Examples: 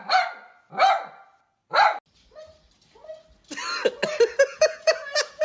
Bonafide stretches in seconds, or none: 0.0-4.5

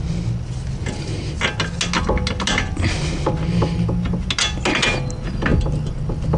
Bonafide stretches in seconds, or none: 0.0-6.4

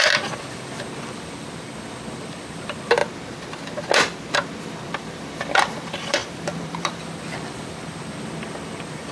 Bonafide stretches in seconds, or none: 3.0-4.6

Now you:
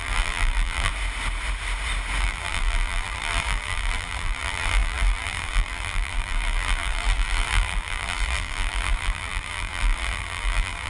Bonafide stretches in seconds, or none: 0.9-2.2

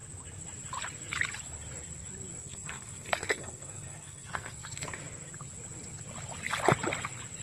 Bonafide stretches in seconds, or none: 0.0-2.4; 5.0-7.4

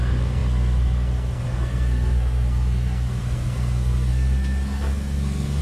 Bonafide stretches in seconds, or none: none

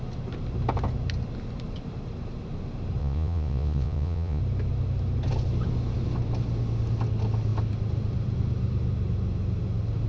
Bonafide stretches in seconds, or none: 0.0-3.0; 4.4-10.1

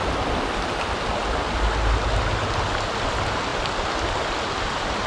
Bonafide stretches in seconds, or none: 0.0-5.1